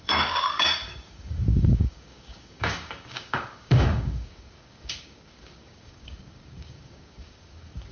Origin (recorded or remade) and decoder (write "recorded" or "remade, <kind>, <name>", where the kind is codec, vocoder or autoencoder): remade, codec, DAC